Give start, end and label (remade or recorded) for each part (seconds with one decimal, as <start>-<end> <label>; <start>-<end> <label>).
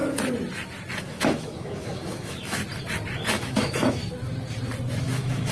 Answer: 0.0-1.0 recorded; 1.0-2.6 remade; 2.6-3.3 recorded; 3.3-4.0 remade; 4.0-5.0 recorded; 5.0-5.5 remade